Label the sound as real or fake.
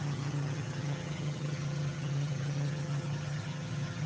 fake